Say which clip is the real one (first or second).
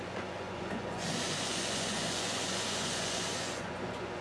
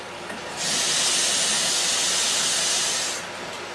second